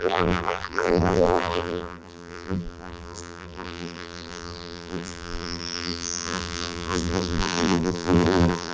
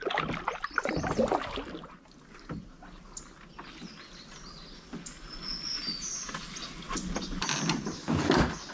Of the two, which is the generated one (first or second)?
first